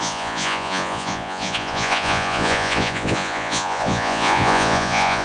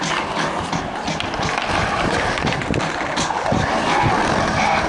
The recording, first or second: second